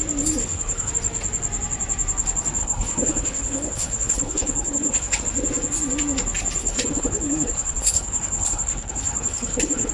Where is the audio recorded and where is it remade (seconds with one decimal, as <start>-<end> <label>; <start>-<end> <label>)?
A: 0.0-0.4 recorded; 0.4-0.9 remade; 0.9-2.6 recorded; 2.6-5.2 remade; 5.2-6.6 recorded; 6.6-9.9 remade